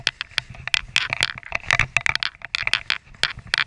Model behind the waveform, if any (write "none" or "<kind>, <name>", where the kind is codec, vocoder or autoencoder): none